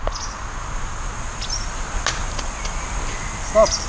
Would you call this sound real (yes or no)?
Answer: yes